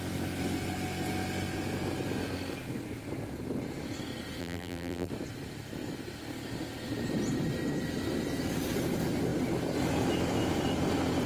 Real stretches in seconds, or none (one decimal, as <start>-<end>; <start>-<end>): 0.0-4.4; 5.1-11.3